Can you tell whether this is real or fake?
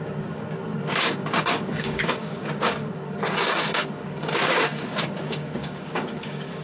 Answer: fake